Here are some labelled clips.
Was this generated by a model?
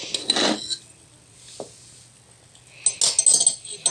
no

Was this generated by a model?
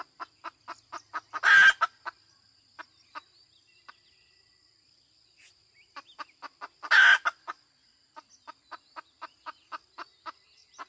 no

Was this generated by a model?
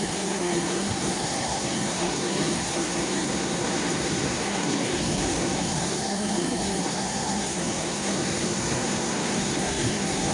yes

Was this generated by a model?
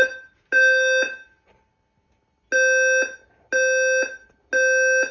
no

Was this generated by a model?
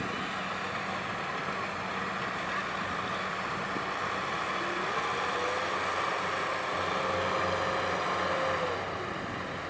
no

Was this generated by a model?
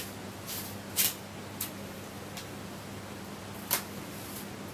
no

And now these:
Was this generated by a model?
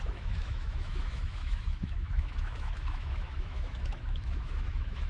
yes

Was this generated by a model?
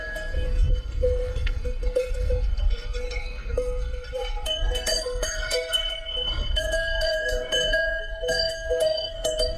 yes